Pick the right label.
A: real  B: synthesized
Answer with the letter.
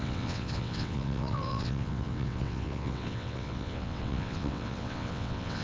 B